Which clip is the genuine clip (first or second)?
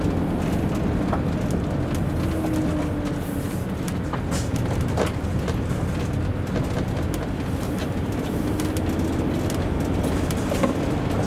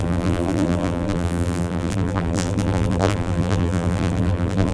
first